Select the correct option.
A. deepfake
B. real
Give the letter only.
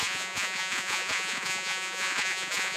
A